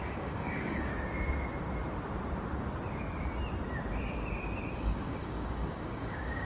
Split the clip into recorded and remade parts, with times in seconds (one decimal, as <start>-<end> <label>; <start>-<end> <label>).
0.0-0.9 remade; 0.9-4.7 recorded; 4.7-6.4 remade